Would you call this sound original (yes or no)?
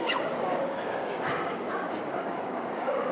no